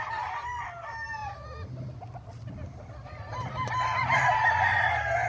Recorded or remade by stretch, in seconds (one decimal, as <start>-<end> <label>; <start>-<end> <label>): 0.0-5.3 recorded